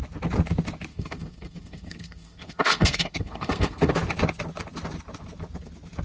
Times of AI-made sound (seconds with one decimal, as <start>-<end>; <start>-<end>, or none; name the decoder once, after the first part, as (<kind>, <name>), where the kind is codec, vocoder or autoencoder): 0.9-3.9 (codec, SNAC)